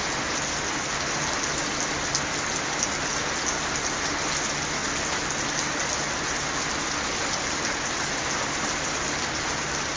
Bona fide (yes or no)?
yes